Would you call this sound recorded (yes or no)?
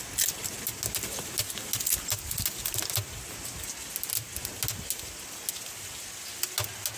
yes